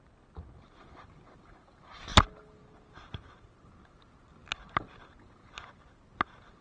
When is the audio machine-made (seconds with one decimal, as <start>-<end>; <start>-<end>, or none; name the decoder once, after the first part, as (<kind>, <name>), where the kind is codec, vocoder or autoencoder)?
none